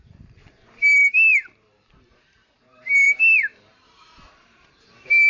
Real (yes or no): no